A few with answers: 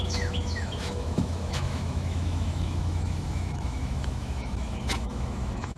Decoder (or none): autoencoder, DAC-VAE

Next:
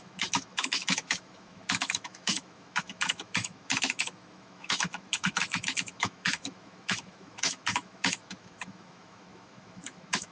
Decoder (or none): autoencoder, DAC-VAE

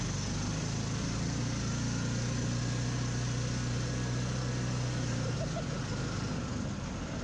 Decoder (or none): none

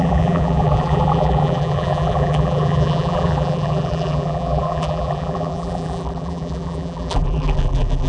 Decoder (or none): vocoder, BigVGAN v2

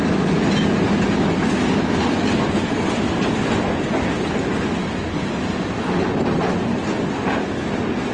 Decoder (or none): none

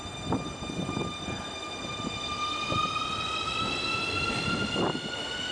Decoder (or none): none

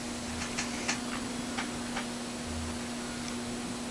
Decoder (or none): none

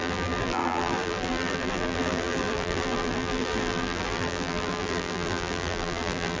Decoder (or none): vocoder, BigVGAN v2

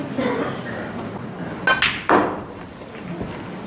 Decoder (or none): none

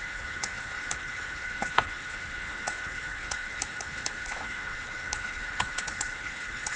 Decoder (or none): codec, HILCodec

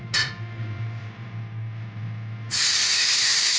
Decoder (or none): none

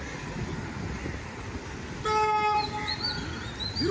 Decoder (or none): none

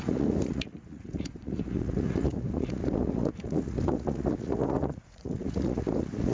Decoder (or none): vocoder, Vocos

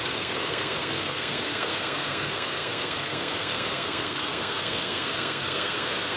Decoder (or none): codec, SNAC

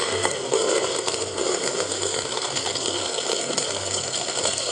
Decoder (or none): codec, SNAC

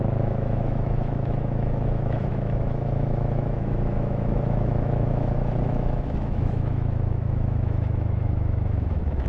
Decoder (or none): autoencoder, DAC-VAE